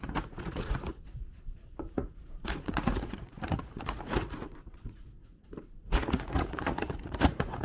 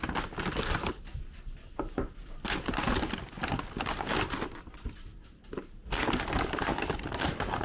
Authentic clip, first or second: second